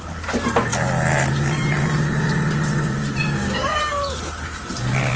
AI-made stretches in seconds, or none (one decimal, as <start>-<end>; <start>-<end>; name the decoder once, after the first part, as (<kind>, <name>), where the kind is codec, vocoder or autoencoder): 3.2-3.8 (codec, DAC)